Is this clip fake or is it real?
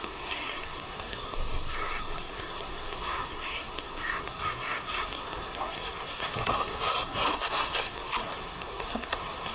fake